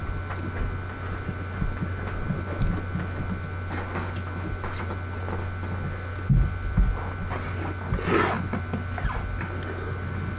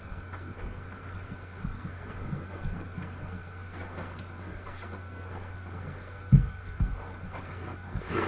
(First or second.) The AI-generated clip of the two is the second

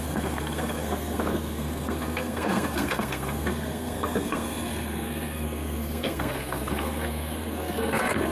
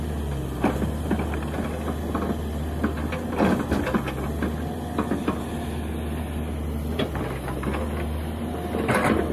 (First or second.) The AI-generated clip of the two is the first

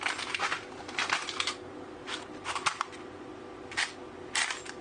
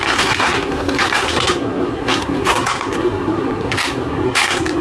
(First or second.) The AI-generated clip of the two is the second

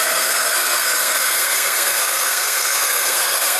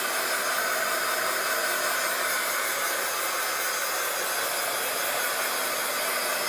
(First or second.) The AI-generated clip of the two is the first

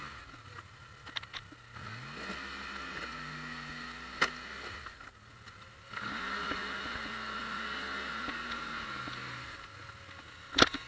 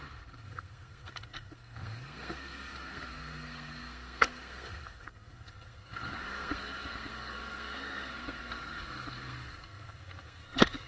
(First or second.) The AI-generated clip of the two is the second